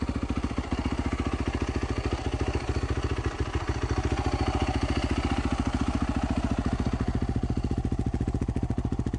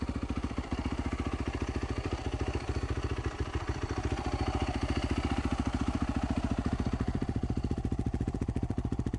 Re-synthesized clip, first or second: second